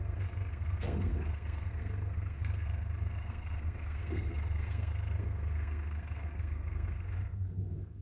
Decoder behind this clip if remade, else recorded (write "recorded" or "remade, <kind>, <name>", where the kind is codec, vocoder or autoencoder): remade, codec, SNAC